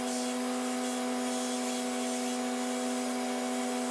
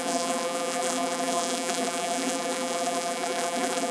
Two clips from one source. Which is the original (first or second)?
first